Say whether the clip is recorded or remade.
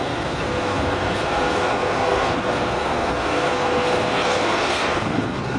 remade